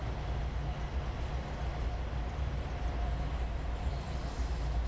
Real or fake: real